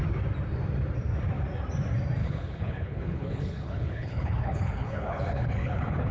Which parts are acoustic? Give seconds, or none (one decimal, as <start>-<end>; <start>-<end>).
0.0-2.2